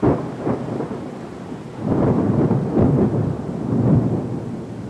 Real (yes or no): yes